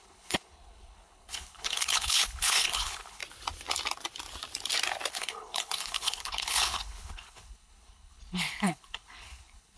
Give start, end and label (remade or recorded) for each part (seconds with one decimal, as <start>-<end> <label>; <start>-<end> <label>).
0.0-3.2 remade; 3.2-5.1 recorded; 5.1-9.8 remade